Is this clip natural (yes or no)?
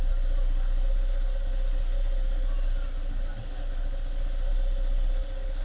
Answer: yes